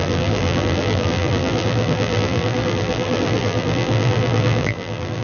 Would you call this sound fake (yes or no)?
yes